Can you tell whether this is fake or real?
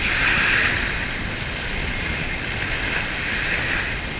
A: real